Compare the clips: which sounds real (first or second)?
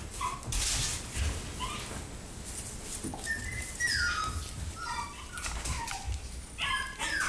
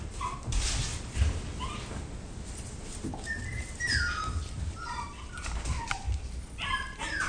first